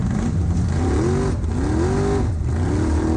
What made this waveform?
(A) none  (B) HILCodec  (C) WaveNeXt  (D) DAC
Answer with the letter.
A